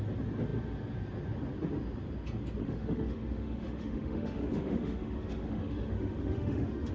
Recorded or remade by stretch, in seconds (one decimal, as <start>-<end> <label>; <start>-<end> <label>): 0.0-2.6 recorded; 2.6-6.9 remade